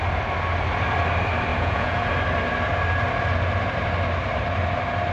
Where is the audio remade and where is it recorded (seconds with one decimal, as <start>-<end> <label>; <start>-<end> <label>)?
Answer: 0.0-1.5 recorded; 1.5-2.1 remade; 2.1-5.1 recorded